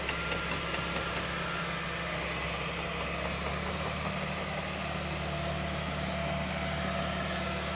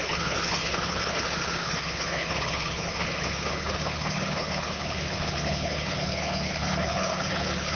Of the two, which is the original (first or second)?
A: first